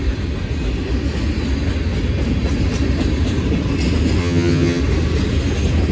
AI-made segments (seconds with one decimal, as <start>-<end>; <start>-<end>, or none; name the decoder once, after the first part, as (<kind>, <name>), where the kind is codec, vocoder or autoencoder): 4.2-4.8 (vocoder, HiFi-GAN)